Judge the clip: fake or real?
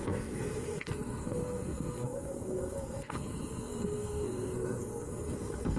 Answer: fake